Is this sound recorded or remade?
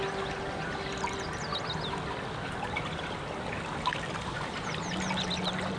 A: recorded